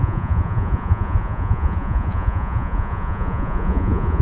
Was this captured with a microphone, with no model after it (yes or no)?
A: no